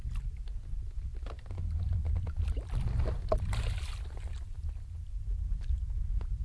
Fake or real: real